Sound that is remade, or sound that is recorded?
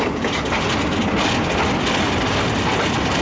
recorded